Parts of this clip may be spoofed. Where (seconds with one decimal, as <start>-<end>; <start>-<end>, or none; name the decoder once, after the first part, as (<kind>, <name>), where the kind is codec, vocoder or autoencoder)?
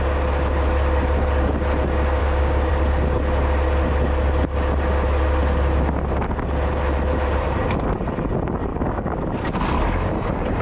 2.2-2.7 (codec, DAC); 8.7-9.3